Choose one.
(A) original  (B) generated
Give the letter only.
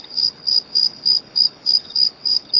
B